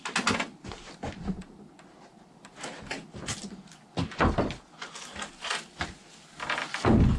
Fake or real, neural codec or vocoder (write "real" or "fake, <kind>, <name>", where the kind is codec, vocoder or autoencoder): real